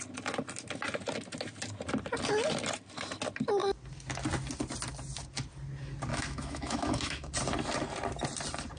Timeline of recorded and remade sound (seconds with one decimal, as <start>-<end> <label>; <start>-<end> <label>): 0.0-6.1 recorded; 6.1-7.3 remade; 7.3-8.8 recorded